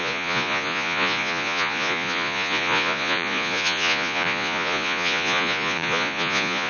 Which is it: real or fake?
fake